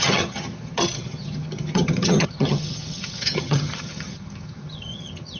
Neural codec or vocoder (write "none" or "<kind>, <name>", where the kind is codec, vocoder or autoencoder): vocoder, HiFi-GAN